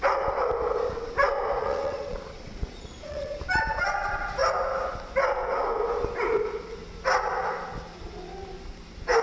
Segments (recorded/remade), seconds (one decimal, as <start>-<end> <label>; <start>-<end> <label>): 0.0-1.6 recorded; 1.6-3.4 remade; 3.4-9.2 recorded

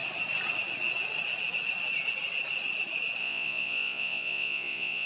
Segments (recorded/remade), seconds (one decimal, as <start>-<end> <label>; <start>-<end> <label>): 0.0-3.2 recorded; 3.2-5.1 remade

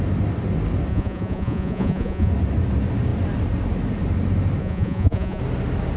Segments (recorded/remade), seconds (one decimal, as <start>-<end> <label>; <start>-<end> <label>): 0.0-0.9 recorded; 0.9-2.3 remade; 2.3-4.6 recorded; 4.6-5.4 remade; 5.4-6.0 recorded

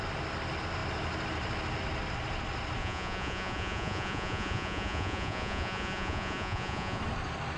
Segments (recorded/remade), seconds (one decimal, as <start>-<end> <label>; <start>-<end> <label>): 0.0-2.8 recorded; 2.8-7.0 remade; 7.0-7.6 recorded

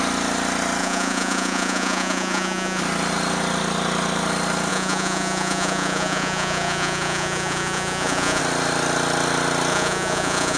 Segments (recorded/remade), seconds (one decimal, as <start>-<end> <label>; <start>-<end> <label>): 0.0-0.8 recorded; 0.8-2.8 remade; 2.8-4.7 recorded; 4.7-8.4 remade; 8.4-9.7 recorded; 9.7-10.6 remade

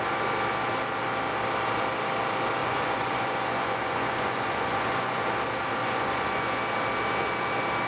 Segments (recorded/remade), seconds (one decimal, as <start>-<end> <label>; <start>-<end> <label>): 0.0-2.6 recorded; 2.6-5.3 remade; 5.3-5.8 recorded; 5.8-6.6 remade; 6.6-7.9 recorded